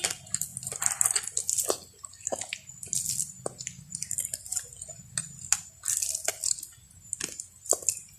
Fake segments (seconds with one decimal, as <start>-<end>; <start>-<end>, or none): none

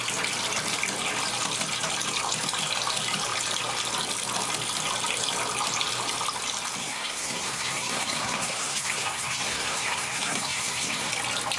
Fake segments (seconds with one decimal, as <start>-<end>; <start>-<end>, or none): 6.8-11.1

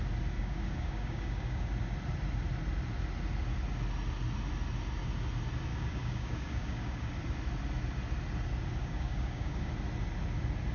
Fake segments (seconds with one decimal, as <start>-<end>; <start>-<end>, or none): 0.4-1.7; 5.7-7.1; 8.8-9.7